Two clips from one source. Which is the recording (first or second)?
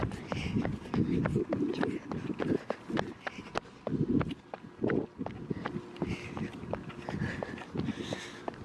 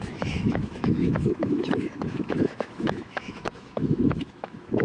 first